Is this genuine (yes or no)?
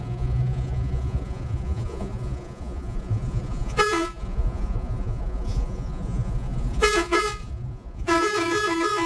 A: no